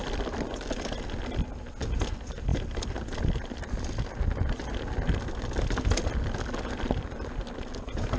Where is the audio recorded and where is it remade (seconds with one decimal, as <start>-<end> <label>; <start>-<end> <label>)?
0.0-8.2 recorded